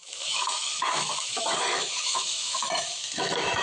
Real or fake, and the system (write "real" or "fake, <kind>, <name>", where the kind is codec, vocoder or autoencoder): fake, autoencoder, DAC-VAE